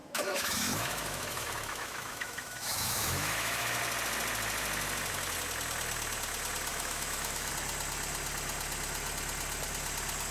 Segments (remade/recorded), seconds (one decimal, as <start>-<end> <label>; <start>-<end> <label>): 0.0-3.8 remade; 3.8-6.7 recorded; 6.7-7.5 remade; 7.5-10.3 recorded